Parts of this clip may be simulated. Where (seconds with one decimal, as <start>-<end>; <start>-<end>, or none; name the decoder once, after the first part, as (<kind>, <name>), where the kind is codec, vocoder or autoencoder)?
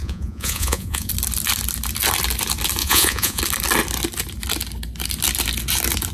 0.0-1.1 (vocoder, Vocos); 2.8-3.4